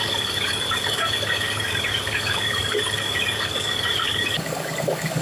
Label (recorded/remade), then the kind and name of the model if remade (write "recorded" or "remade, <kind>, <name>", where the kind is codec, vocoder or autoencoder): remade, codec, DAC